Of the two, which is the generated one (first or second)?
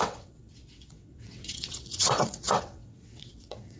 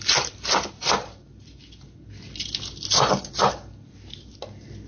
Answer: first